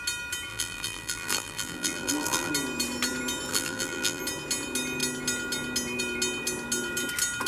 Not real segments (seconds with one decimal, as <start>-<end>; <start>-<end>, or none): 0.5-2.5; 3.5-4.2